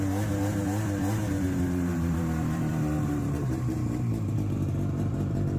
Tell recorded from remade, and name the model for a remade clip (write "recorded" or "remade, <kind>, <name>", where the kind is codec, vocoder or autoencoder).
remade, vocoder, BigVGAN v2